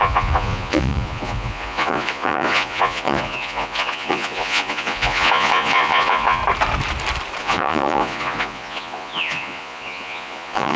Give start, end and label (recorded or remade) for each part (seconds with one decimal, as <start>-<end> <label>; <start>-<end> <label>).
0.0-6.4 remade; 6.4-7.4 recorded; 7.4-10.8 remade